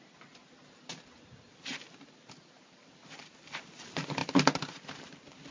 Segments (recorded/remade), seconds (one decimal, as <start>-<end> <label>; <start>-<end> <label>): 0.0-5.5 recorded